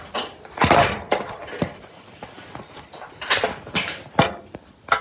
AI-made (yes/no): yes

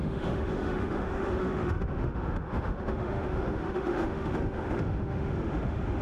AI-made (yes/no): yes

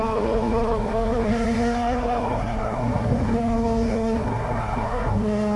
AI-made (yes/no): yes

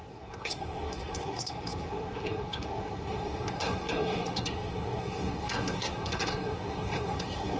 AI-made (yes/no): yes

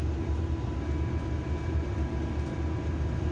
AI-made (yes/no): no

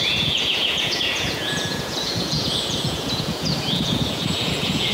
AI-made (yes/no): yes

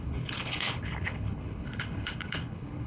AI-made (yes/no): yes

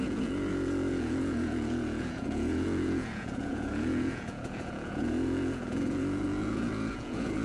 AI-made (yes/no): yes